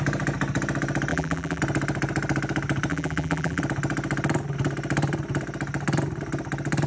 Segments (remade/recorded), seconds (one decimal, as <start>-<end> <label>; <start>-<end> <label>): 0.0-1.1 recorded; 1.1-1.6 remade; 1.6-2.9 recorded; 2.9-3.6 remade; 3.6-6.9 recorded